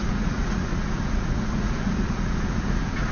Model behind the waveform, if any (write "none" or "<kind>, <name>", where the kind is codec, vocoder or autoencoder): vocoder, Vocos